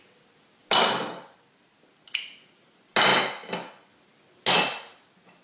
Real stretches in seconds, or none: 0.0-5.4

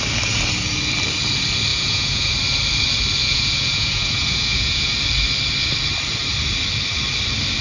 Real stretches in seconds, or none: 0.0-1.7; 2.3-3.2; 4.9-7.6

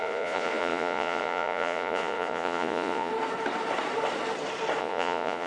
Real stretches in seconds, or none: 3.1-4.8